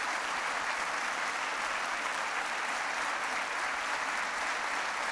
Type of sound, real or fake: real